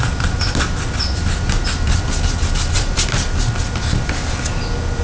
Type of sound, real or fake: real